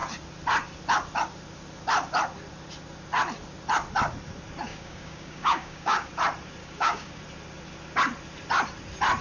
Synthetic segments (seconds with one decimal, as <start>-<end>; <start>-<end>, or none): 4.7-6.1; 6.6-7.2